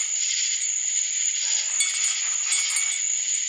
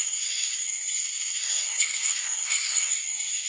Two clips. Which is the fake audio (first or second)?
second